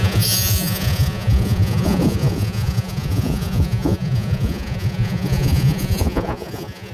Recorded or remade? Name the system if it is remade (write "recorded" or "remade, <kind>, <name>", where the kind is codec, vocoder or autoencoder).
remade, vocoder, Vocos